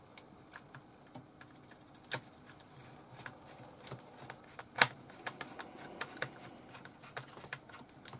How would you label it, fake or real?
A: real